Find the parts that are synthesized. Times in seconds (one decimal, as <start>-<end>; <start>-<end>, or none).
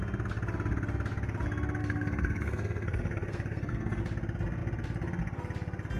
1.8-4.0